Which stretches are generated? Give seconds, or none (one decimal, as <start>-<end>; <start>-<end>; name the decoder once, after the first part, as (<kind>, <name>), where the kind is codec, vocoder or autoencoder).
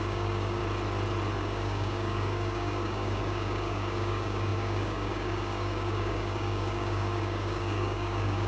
0.0-0.6 (codec, DAC); 1.4-8.5